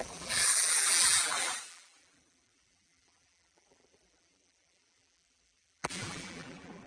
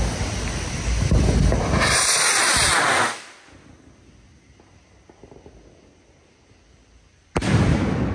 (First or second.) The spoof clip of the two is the first